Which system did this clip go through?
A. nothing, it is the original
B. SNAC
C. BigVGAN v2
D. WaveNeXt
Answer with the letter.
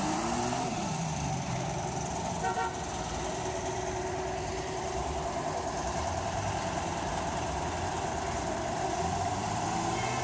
C